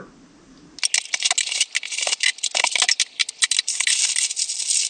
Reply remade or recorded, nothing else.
recorded